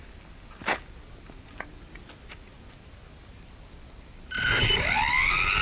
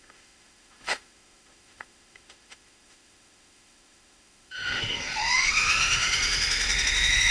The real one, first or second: first